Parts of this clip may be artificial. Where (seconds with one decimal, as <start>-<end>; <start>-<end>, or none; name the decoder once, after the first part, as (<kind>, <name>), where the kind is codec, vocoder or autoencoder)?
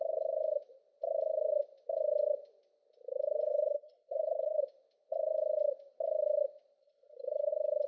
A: 3.5-4.6 (codec, HILCodec); 6.8-7.5